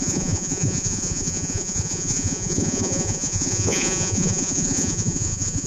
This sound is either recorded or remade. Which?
remade